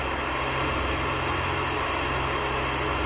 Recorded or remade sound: recorded